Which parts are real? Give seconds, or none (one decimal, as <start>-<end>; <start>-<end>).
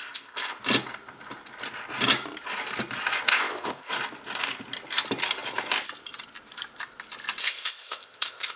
0.6-3.3; 3.9-7.4